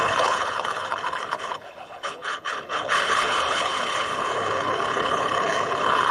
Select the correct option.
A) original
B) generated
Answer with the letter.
B